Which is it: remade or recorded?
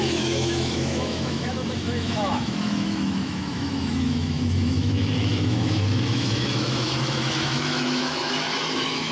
remade